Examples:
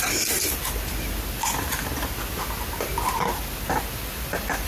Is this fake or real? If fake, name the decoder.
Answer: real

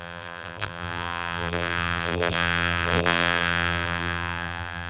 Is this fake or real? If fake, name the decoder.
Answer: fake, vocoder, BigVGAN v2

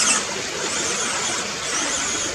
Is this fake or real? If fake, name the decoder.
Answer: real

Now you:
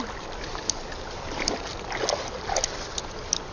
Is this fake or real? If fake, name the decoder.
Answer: real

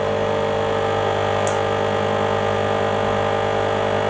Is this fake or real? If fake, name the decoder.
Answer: real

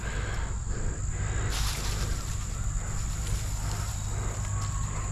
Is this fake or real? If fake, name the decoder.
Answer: real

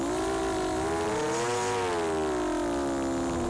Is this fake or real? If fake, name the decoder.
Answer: real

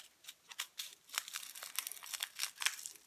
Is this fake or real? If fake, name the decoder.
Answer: real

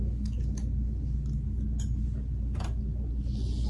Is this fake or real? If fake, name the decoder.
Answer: real